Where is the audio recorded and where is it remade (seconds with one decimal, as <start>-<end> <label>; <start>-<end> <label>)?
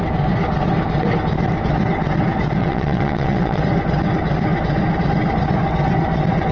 0.0-2.6 recorded; 2.6-3.6 remade; 3.6-6.5 recorded